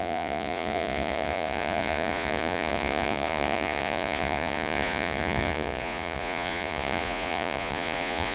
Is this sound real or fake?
fake